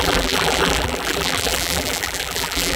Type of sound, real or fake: fake